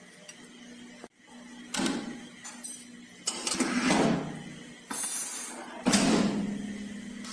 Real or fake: real